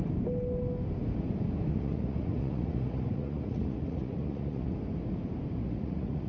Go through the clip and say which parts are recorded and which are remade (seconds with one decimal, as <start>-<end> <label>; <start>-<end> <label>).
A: 0.0-1.7 recorded; 1.7-4.7 remade; 4.7-5.6 recorded; 5.6-6.3 remade